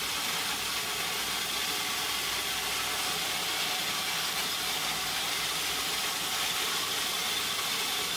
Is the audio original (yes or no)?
yes